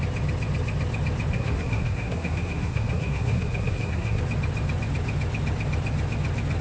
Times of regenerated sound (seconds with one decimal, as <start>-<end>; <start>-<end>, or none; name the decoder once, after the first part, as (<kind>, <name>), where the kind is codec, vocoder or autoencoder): 1.3-4.2 (codec, SNAC)